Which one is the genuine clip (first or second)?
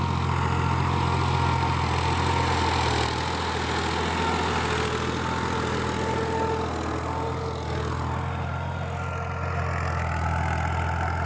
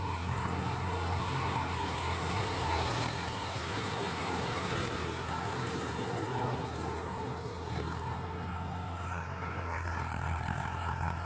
first